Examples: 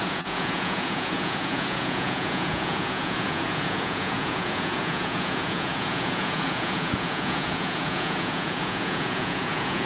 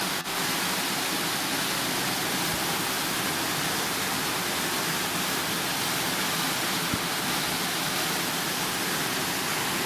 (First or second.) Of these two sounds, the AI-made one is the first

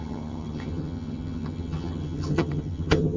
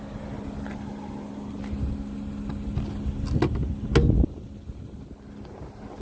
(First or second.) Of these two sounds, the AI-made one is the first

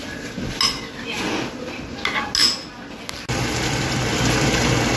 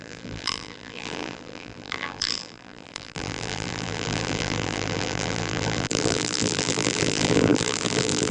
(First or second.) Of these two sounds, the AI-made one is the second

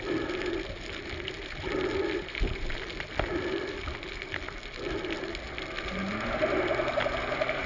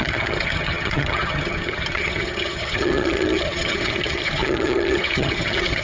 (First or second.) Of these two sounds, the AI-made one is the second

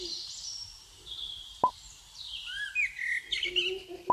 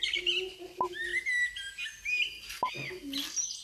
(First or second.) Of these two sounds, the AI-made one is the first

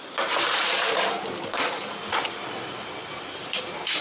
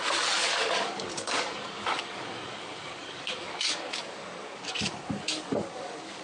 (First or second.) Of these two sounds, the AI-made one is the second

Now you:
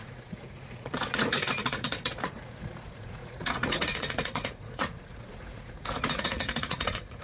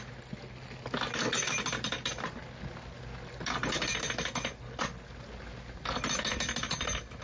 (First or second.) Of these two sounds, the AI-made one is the first